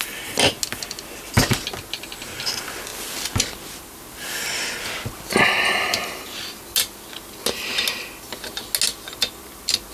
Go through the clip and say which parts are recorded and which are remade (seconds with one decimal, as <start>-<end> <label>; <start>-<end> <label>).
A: 0.0-9.9 recorded